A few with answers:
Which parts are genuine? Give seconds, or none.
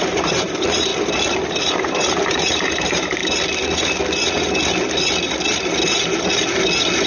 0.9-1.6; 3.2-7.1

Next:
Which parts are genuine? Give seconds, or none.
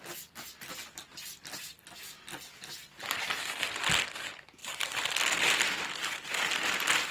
0.0-4.6; 5.2-7.1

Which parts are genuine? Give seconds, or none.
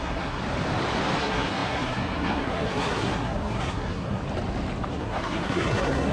0.4-1.2; 4.2-4.9